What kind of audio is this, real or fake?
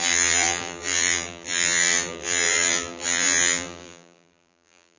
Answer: fake